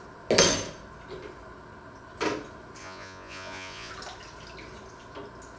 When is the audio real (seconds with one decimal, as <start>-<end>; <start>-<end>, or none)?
0.0-2.8; 3.9-5.6